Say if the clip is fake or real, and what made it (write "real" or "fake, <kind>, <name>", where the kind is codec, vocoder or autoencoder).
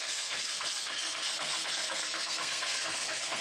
fake, codec, SNAC